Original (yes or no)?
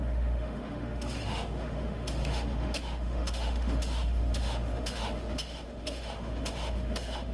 no